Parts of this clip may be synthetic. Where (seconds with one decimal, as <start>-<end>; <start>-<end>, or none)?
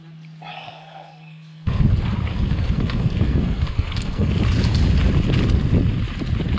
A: 0.5-1.9; 2.3-4.3